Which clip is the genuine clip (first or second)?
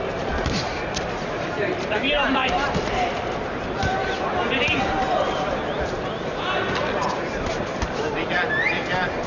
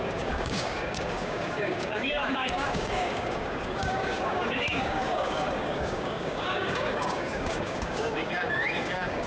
first